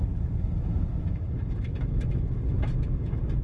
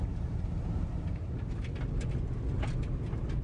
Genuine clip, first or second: second